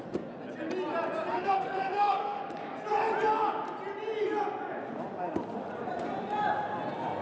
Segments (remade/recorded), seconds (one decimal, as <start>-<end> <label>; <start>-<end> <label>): 0.0-1.3 recorded; 1.3-2.4 remade; 2.4-7.2 recorded